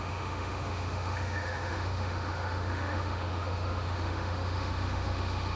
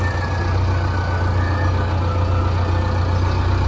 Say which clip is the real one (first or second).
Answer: second